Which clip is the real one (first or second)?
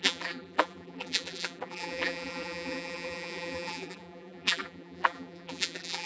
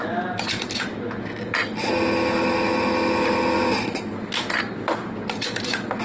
second